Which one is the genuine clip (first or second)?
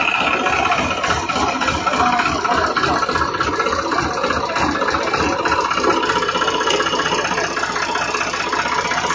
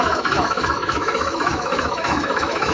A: first